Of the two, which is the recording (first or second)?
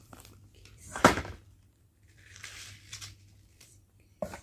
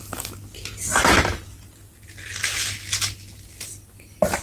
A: second